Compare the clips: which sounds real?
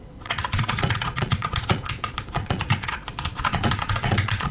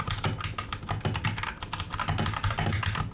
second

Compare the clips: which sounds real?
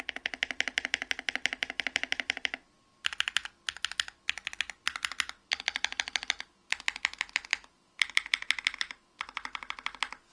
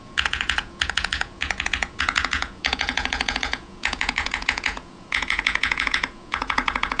first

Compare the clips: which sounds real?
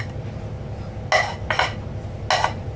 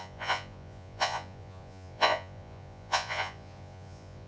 first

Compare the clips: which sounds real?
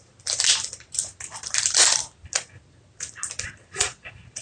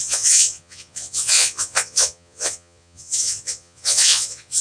first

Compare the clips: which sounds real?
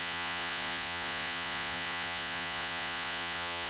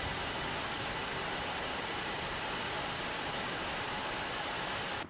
second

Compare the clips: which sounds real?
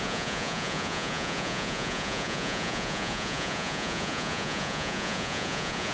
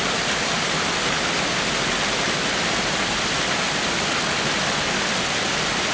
second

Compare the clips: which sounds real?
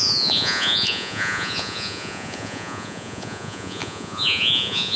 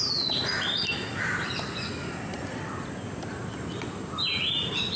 second